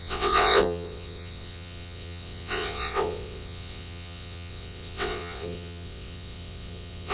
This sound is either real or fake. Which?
fake